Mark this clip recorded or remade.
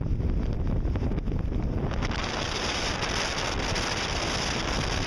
recorded